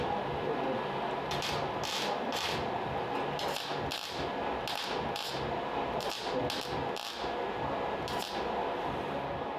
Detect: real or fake real